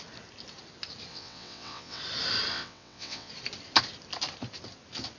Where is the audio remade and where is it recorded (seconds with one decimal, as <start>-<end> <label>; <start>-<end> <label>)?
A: 0.0-1.1 recorded; 1.1-2.0 remade; 2.0-2.5 recorded; 2.5-3.3 remade; 3.3-5.2 recorded